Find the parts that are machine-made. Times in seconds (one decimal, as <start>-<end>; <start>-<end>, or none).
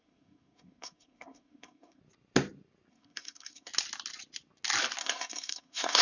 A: 0.0-2.0; 2.9-3.7; 5.0-6.0